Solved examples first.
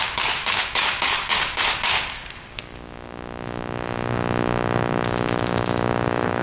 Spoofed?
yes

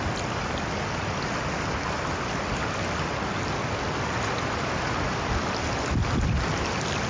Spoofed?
no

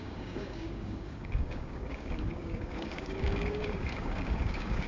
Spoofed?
yes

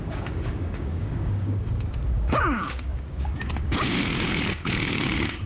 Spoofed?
yes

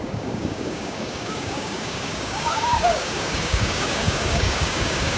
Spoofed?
yes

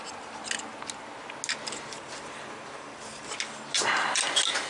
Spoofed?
no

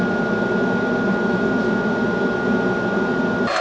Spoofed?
no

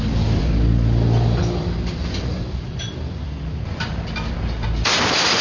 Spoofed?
no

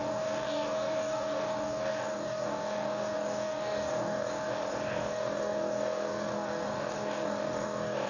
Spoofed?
yes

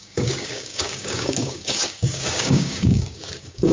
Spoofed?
yes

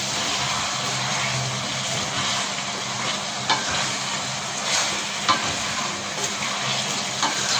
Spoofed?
no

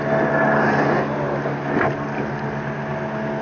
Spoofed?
no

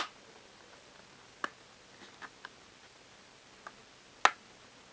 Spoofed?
no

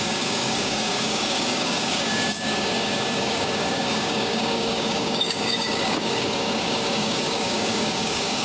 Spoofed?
yes